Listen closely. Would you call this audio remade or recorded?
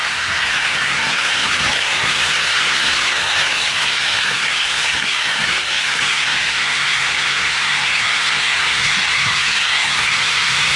remade